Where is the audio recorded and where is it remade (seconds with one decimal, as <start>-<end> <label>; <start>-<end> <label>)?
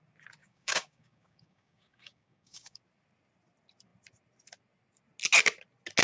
0.0-0.4 recorded; 0.4-2.8 remade; 2.8-6.0 recorded